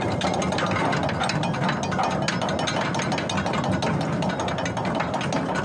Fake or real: real